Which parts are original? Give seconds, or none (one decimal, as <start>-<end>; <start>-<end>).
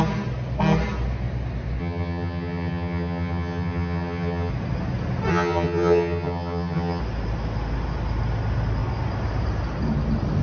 0.0-1.8; 4.5-5.3; 7.0-10.4